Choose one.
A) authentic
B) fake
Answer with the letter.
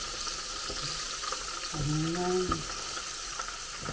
A